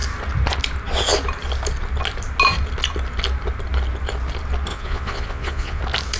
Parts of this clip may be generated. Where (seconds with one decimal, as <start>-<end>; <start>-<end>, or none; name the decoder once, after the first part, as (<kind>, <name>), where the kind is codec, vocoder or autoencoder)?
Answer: 4.7-5.8 (vocoder, Vocos)